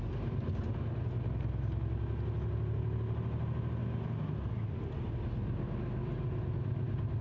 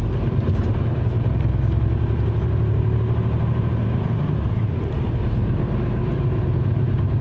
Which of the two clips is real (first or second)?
first